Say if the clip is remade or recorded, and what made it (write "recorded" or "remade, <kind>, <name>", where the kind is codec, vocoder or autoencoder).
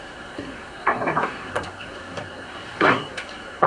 remade, codec, SNAC